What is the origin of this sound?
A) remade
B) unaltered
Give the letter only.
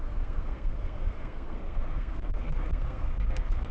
A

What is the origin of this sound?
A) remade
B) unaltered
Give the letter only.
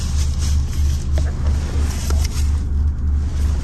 B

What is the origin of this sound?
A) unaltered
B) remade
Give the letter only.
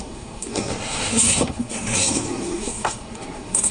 B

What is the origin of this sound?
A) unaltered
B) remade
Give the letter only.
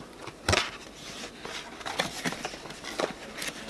A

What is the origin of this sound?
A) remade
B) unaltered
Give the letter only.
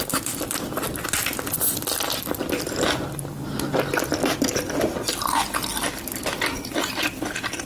B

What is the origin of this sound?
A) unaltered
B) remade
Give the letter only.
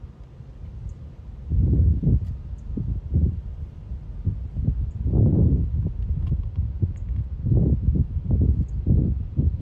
A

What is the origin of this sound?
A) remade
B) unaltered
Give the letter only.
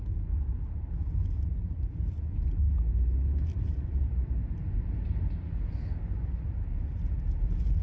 B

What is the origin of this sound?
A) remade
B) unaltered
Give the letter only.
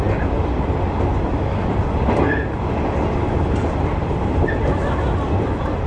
B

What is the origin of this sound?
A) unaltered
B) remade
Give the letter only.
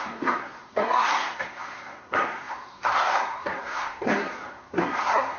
B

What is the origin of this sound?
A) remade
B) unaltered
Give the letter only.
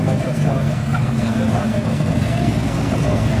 A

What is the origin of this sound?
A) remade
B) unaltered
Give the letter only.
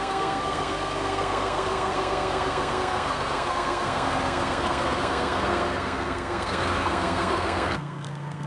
A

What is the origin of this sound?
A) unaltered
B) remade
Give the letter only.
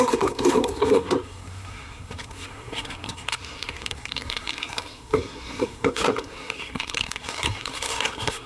B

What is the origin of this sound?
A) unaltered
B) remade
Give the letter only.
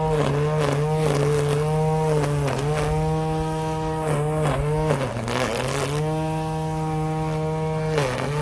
A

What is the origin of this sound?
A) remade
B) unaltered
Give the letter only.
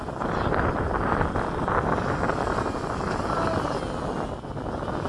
B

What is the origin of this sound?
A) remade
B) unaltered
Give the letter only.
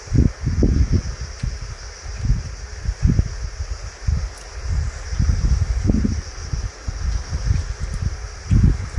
B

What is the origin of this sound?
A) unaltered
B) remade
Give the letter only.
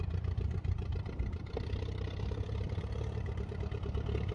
A